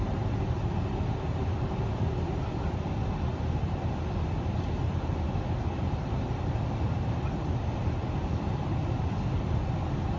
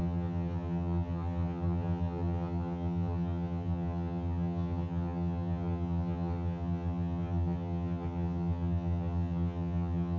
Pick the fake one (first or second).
second